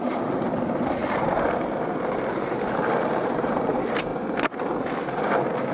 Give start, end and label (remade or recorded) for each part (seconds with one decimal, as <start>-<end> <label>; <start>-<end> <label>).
0.0-1.0 remade; 1.0-2.9 recorded; 2.9-4.1 remade; 4.1-5.7 recorded